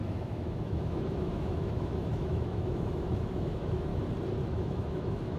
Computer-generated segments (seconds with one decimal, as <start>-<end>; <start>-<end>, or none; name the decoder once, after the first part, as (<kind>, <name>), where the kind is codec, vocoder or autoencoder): 0.0-3.9 (autoencoder, DAC-VAE); 4.5-5.4